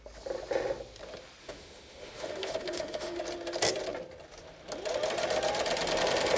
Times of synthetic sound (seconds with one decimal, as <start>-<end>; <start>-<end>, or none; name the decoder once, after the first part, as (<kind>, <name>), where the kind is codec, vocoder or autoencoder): 1.4-3.2 (autoencoder, DAC-VAE)